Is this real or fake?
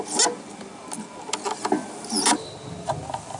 real